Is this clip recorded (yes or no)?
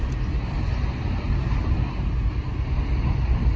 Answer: yes